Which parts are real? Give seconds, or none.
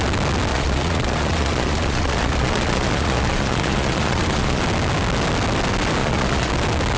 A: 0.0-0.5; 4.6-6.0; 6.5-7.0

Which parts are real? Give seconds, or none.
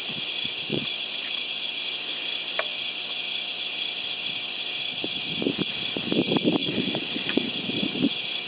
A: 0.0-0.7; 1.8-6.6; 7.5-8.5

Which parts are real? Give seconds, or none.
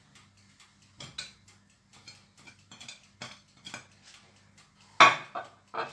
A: 0.0-5.9